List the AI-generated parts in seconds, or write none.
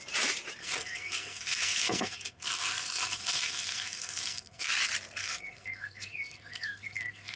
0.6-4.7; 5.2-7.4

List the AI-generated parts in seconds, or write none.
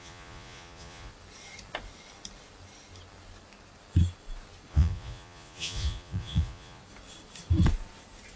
0.0-1.1; 4.7-6.8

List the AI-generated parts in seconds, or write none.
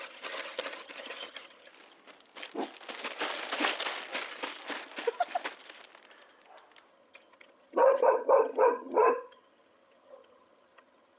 0.0-1.7; 6.9-11.2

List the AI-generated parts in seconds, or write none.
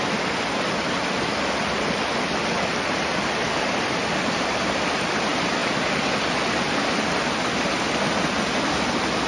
none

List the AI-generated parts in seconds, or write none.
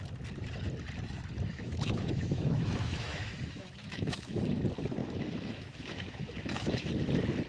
1.5-4.4; 5.0-6.9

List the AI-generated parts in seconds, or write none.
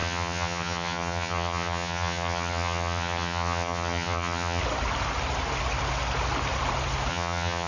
0.0-4.6; 7.1-7.7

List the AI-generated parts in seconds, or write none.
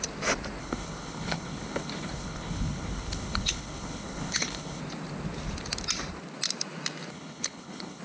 0.6-4.8; 7.1-8.0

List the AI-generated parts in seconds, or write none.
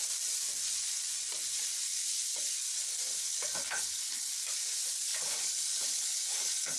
3.1-4.3; 5.1-6.8